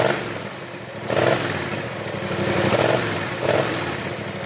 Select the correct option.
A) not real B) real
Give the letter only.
A